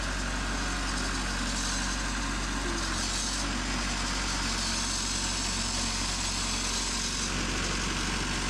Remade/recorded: recorded